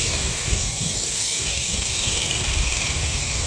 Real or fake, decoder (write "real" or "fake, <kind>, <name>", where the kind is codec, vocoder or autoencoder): fake, codec, DAC